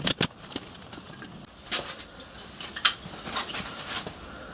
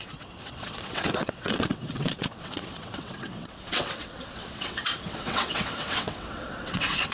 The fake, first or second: second